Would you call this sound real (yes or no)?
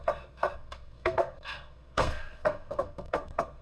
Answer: no